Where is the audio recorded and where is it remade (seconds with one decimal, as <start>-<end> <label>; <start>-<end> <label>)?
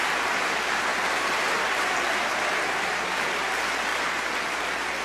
0.0-5.0 recorded